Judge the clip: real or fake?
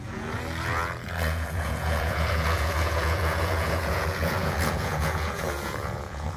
fake